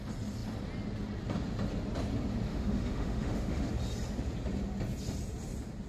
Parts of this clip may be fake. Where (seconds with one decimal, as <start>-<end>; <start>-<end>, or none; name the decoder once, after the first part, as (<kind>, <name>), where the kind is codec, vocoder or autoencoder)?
2.5-3.7 (autoencoder, DAC-VAE)